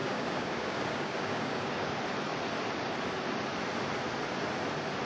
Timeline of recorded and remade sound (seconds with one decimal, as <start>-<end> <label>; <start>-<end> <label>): 0.0-1.9 remade; 1.9-5.1 recorded